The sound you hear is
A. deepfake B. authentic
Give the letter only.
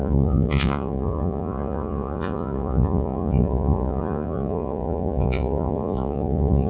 A